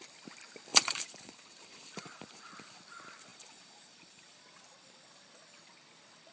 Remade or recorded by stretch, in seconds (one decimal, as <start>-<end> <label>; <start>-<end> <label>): 0.0-0.7 recorded; 0.7-2.5 remade; 2.5-3.3 recorded; 3.3-4.6 remade; 4.6-6.3 recorded